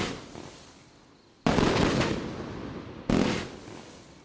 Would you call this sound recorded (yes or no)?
yes